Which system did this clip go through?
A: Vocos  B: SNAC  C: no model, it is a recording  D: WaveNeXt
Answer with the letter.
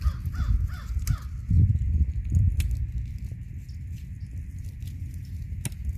C